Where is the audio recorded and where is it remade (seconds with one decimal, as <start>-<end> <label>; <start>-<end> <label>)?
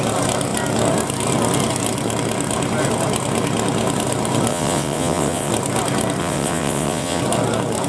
0.0-4.5 recorded; 4.5-5.5 remade; 5.5-6.2 recorded; 6.2-7.2 remade; 7.2-7.9 recorded